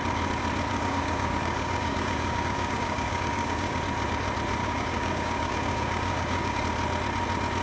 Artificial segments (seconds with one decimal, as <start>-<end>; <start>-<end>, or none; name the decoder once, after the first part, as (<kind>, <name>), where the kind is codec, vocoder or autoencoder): 0.7-3.8 (codec, DAC); 4.6-6.6